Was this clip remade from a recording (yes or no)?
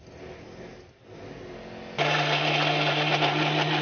no